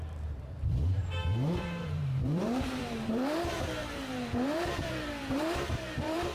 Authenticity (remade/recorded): remade